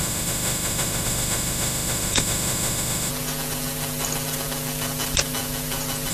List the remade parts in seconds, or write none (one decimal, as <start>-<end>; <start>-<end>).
0.0-3.1